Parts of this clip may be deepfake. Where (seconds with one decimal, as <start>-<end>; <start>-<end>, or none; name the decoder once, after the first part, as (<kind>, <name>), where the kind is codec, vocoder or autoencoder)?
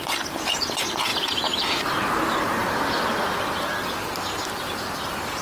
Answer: 1.1-1.8 (vocoder, Vocos)